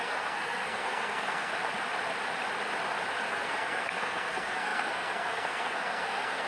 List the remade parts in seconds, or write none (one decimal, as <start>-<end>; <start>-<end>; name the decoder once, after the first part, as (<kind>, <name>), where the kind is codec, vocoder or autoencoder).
0.0-1.5 (codec, SNAC); 3.3-6.5